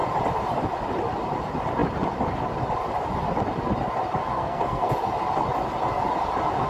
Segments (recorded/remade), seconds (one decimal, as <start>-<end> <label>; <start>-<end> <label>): 0.0-4.3 recorded; 4.3-4.9 remade; 4.9-6.7 recorded

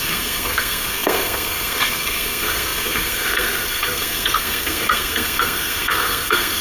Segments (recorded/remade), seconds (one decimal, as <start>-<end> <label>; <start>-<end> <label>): 0.0-6.6 remade

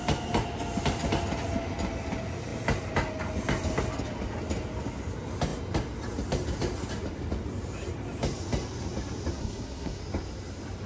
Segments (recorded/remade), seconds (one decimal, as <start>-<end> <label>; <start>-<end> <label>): 0.0-9.3 recorded; 9.3-10.0 remade; 10.0-10.9 recorded

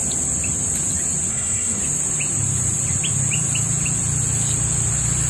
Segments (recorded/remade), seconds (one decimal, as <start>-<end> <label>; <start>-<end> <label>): 0.0-1.3 recorded; 1.3-1.8 remade; 1.8-5.3 recorded

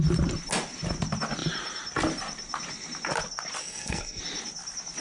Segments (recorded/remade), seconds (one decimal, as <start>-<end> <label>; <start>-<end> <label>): 0.0-3.6 recorded; 3.6-4.2 remade; 4.2-5.0 recorded

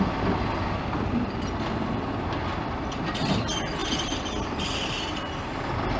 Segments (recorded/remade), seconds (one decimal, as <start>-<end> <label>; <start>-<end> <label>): 0.0-6.0 recorded